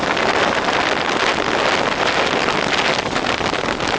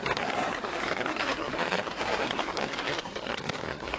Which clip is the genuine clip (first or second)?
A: first